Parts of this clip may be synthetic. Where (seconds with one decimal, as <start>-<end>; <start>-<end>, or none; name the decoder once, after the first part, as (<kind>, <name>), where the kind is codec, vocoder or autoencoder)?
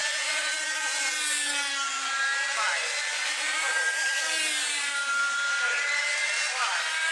3.1-7.1 (vocoder, BigVGAN v2)